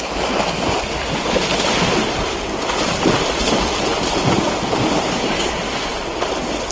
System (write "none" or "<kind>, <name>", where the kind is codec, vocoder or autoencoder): none